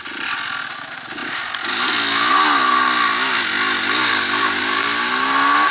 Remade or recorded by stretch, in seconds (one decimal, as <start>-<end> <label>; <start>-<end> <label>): 0.0-5.7 recorded